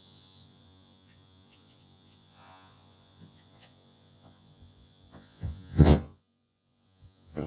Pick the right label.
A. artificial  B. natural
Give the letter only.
A